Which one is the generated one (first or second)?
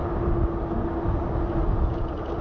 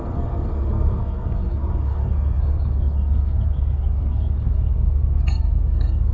second